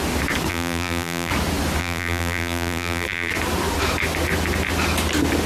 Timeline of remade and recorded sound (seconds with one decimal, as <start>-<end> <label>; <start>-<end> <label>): 0.0-0.5 recorded; 0.5-1.3 remade; 1.3-1.8 recorded; 1.8-3.3 remade; 3.3-5.5 recorded